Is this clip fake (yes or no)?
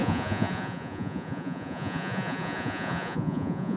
yes